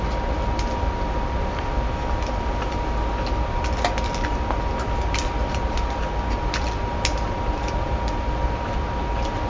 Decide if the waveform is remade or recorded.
recorded